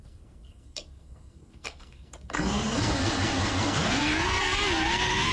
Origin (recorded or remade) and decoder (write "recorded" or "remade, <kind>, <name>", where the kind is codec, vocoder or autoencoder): remade, codec, SNAC